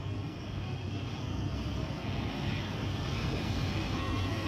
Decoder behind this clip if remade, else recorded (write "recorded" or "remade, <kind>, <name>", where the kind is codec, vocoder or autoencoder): remade, codec, SNAC